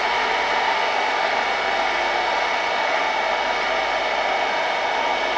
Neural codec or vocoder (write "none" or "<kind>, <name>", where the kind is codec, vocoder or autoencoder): none